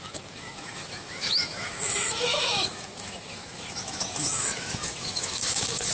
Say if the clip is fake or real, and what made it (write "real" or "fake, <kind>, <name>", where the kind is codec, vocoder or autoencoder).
fake, autoencoder, DAC-VAE